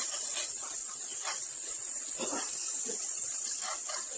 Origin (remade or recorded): recorded